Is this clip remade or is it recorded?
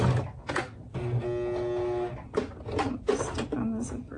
recorded